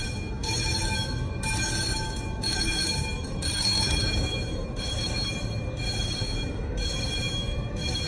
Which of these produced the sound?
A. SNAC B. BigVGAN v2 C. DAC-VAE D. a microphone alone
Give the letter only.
C